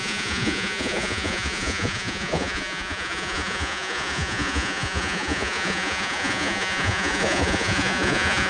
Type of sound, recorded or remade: remade